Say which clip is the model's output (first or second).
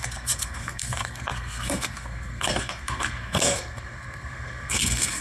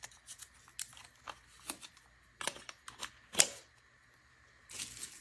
first